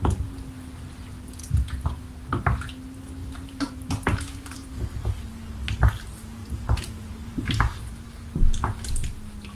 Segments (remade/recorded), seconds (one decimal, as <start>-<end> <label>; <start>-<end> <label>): 0.0-1.4 recorded; 1.4-2.0 remade; 2.0-3.2 recorded; 3.2-5.3 remade; 5.3-6.4 recorded; 6.4-7.8 remade; 7.8-9.5 recorded